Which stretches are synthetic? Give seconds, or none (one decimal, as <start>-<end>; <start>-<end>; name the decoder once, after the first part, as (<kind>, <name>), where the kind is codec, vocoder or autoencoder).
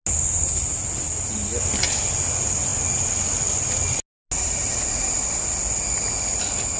0.7-1.5 (vocoder, BigVGAN v2)